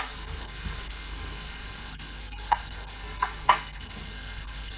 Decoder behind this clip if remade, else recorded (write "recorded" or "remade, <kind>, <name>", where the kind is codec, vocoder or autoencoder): remade, codec, SNAC